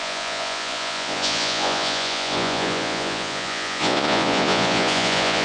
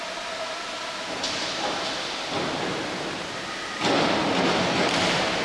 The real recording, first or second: second